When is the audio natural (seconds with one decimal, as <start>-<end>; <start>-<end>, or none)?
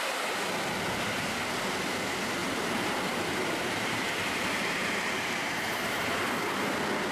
0.0-2.4; 6.0-7.1